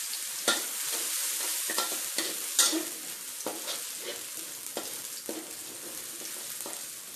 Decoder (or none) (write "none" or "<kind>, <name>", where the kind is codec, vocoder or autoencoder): none